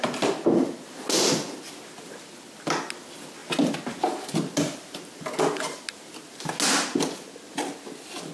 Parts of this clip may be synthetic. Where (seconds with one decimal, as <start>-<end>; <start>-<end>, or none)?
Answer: none